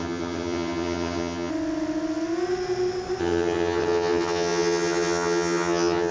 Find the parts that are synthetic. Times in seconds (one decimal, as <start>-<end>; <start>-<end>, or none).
0.0-1.5; 3.2-6.1